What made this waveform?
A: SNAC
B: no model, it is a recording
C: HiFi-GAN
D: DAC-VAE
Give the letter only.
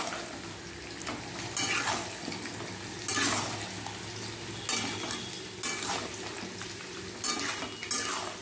B